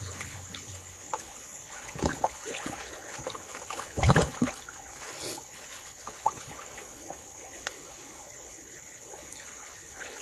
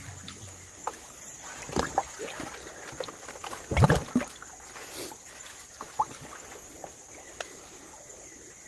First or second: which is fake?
first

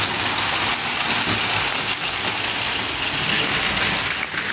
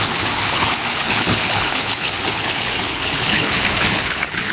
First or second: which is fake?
second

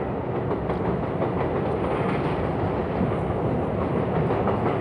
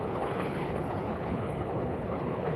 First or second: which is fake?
second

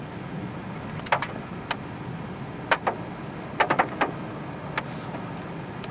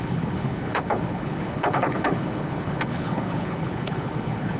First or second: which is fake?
second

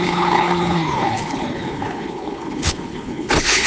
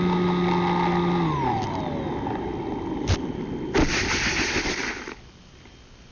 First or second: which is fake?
first